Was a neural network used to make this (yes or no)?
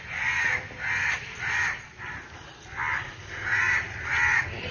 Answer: no